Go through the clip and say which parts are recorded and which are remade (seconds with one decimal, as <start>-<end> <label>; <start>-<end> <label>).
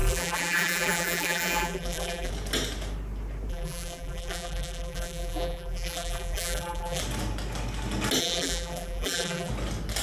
0.0-2.3 remade; 2.3-3.5 recorded; 3.5-7.0 remade; 7.0-8.2 recorded; 8.2-9.5 remade; 9.5-10.0 recorded